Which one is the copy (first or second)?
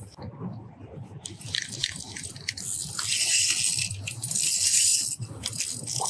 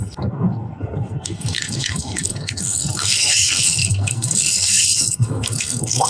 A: second